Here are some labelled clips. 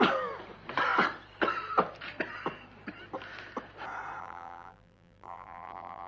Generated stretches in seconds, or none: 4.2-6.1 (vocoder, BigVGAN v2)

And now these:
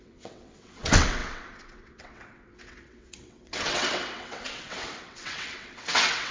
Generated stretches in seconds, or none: 0.0-6.3 (vocoder, WaveNeXt)

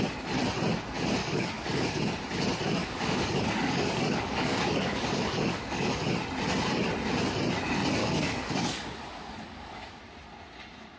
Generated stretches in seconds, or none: 1.2-2.0 (codec, DAC); 2.8-6.1; 8.0-10.0

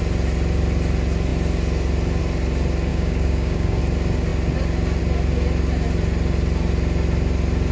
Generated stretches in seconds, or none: 2.9-3.8 (codec, DAC)

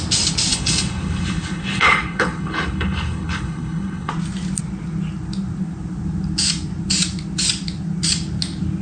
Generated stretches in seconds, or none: 0.5-4.1 (codec, HILCodec)